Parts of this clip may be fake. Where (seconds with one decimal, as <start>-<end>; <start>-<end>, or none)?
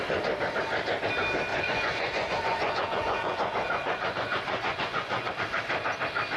1.5-5.3